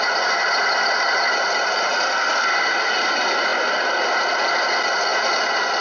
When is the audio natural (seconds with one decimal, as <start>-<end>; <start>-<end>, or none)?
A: 0.0-5.8